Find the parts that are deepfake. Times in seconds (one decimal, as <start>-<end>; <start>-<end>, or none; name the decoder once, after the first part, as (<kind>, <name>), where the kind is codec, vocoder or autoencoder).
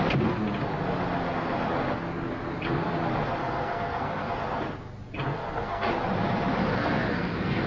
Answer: 3.4-4.3 (codec, SNAC); 5.4-5.9; 6.6-7.7